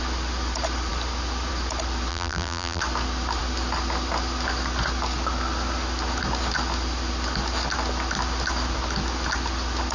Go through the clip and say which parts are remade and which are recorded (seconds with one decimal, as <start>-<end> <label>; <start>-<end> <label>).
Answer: 0.0-2.1 recorded; 2.1-2.8 remade; 2.8-9.9 recorded